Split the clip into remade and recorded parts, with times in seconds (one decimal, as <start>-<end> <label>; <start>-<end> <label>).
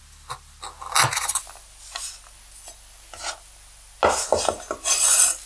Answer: 0.0-5.5 recorded